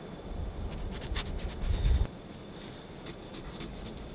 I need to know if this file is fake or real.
real